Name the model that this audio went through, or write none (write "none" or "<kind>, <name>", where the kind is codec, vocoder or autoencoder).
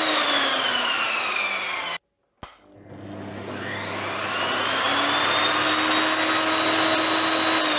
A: none